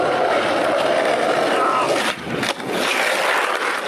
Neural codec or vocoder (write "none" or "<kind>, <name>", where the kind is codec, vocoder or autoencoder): none